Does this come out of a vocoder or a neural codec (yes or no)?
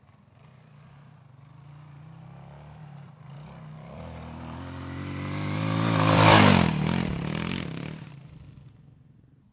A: yes